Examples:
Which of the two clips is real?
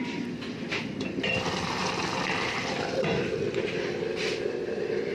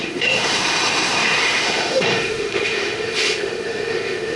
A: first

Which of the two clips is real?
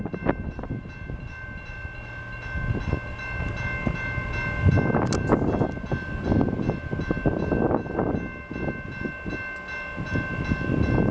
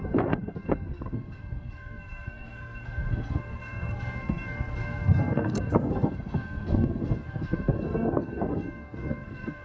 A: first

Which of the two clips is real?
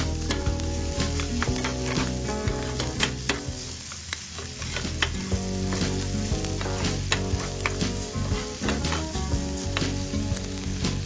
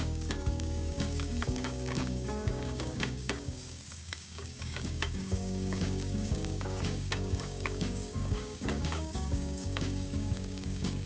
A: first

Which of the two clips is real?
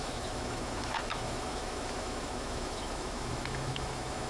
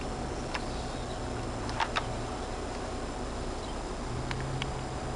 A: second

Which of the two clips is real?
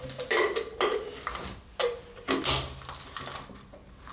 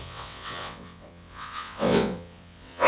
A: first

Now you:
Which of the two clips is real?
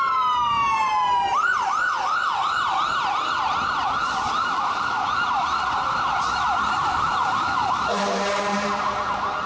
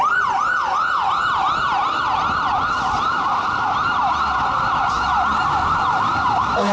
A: second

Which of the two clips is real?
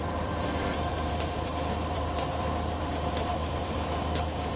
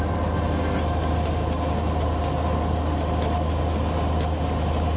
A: second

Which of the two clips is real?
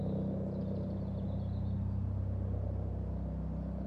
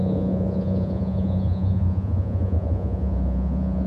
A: first